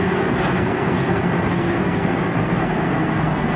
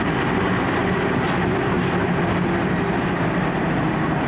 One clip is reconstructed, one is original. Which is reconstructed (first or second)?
first